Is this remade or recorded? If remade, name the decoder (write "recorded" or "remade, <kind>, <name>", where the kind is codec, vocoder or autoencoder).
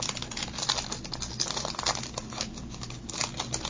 recorded